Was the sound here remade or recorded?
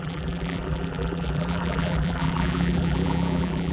remade